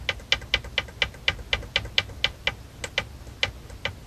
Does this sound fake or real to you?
real